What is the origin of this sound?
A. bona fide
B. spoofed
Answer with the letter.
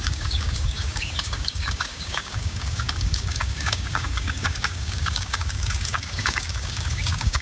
B